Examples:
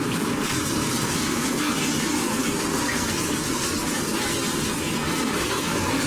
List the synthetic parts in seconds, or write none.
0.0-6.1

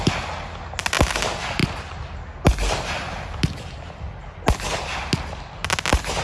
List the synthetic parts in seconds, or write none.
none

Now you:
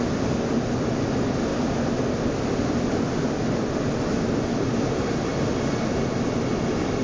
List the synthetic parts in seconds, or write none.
none

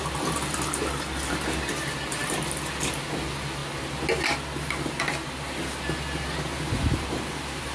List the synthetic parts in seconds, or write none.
none

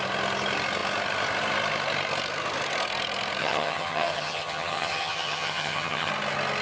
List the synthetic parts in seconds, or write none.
3.4-6.1

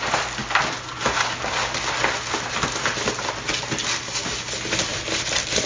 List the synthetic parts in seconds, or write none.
none